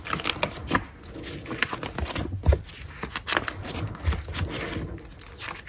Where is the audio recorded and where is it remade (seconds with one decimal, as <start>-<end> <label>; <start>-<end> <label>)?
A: 0.0-5.7 recorded